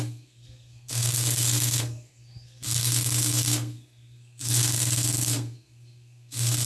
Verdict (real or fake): fake